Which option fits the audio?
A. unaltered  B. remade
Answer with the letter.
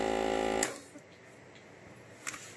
A